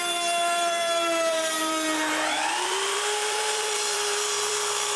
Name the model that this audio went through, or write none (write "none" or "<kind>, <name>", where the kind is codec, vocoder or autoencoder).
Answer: vocoder, BigVGAN v2